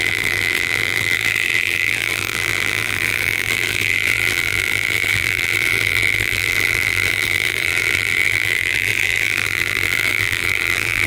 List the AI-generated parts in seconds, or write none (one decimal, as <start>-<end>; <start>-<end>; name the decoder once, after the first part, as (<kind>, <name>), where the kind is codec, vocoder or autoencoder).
0.0-11.1 (vocoder, BigVGAN v2)

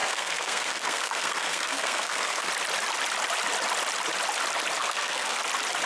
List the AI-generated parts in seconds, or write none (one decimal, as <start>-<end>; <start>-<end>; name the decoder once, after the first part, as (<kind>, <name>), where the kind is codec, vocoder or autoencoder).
0.0-2.5 (codec, SNAC); 4.8-5.4

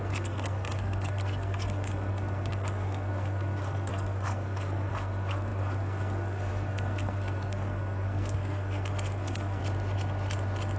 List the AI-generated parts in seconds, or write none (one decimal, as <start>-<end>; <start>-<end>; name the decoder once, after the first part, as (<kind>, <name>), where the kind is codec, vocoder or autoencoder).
0.0-9.6 (codec, SNAC)